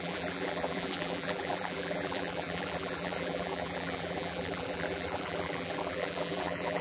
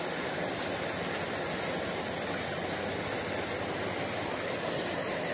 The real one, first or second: second